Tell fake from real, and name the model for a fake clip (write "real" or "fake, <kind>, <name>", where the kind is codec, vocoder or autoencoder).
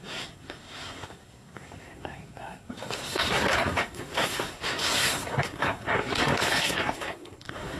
fake, codec, SNAC